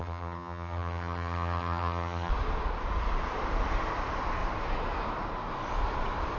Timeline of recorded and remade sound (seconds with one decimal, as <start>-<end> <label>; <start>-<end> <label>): 0.0-2.3 remade; 2.3-6.4 recorded